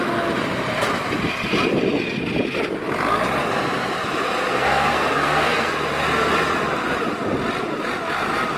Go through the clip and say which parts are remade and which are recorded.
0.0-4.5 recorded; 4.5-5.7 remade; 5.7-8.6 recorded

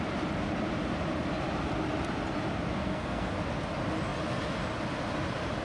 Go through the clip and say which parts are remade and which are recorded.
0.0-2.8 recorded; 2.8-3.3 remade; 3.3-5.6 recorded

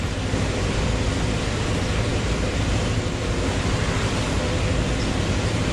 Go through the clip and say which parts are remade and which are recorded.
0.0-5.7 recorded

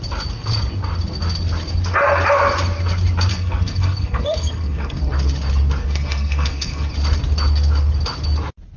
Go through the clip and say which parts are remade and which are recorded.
0.0-3.3 recorded; 3.3-5.0 remade; 5.0-5.8 recorded; 5.8-6.9 remade; 6.9-8.8 recorded